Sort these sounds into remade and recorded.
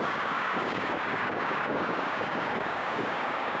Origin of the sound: remade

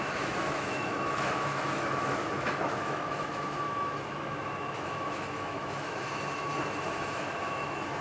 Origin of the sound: remade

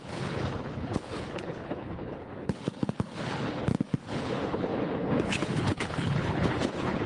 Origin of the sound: remade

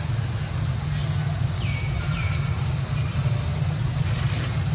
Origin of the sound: recorded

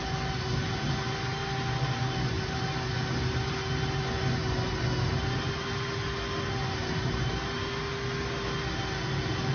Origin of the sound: recorded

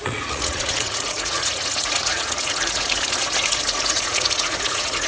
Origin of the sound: remade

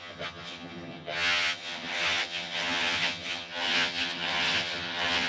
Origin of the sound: remade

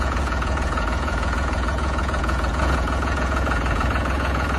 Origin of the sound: remade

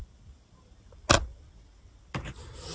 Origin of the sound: recorded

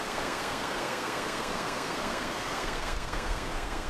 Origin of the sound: remade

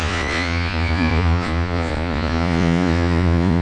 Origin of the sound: remade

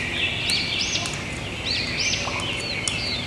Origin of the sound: recorded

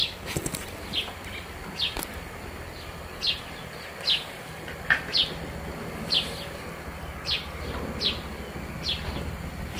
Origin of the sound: recorded